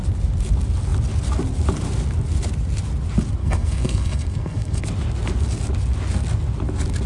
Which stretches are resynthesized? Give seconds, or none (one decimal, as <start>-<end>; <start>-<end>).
3.4-4.8